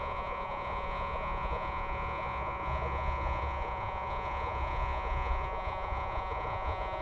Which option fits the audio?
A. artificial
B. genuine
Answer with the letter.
A